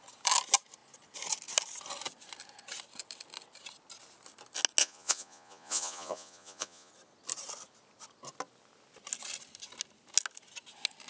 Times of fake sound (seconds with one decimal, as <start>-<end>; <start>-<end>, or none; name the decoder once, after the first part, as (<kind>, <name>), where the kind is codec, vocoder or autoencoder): 4.8-6.9 (vocoder, Vocos)